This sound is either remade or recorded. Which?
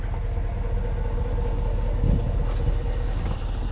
recorded